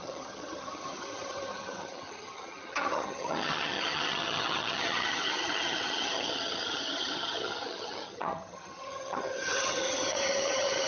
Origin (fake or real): fake